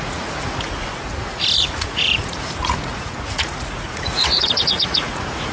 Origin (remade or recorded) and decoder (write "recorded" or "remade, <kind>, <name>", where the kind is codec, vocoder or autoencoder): remade, vocoder, Vocos